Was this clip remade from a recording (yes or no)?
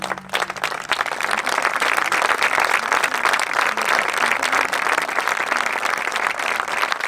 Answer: no